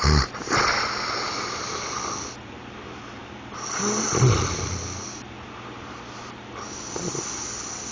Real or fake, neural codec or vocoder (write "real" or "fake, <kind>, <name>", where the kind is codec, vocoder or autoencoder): real